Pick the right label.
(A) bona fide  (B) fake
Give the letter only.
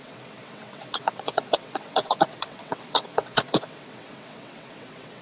B